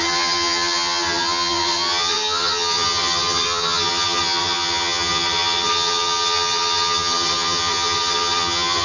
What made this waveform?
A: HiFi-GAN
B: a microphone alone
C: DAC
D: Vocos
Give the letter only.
A